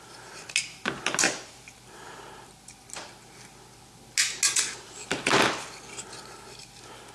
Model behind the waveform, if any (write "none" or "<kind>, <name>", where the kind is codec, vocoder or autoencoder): none